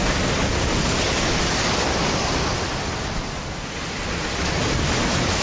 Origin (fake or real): real